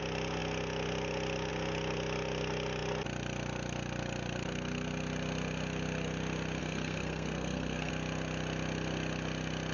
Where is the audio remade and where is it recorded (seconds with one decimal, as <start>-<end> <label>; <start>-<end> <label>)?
0.0-6.6 recorded; 6.6-7.9 remade; 7.9-9.7 recorded